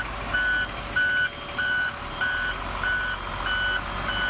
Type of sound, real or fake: real